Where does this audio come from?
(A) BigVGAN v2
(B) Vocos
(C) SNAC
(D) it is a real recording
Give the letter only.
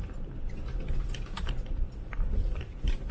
D